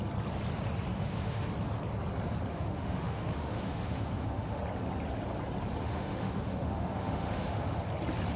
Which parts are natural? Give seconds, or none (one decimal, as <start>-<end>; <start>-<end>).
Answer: 0.0-0.9; 1.5-2.5; 4.6-5.8; 7.8-8.4